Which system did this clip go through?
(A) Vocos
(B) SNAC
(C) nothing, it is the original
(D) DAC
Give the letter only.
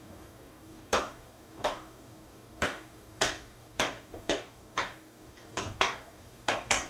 D